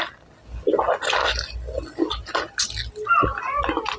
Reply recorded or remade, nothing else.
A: recorded